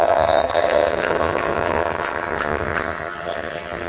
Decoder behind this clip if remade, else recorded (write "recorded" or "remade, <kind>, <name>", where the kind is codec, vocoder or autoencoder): remade, vocoder, HiFi-GAN